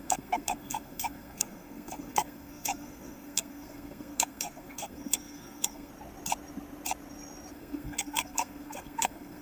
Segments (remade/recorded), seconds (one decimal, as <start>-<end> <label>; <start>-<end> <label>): 0.0-5.9 remade; 5.9-7.5 recorded; 7.5-9.4 remade